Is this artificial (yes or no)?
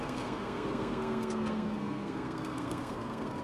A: yes